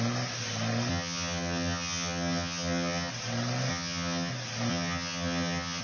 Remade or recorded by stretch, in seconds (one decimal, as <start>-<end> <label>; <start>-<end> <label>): 0.0-0.9 recorded; 0.9-3.1 remade; 3.1-3.7 recorded; 3.7-4.3 remade; 4.3-4.7 recorded; 4.7-5.8 remade